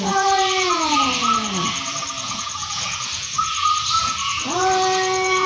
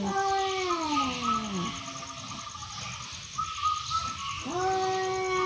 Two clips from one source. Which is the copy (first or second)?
first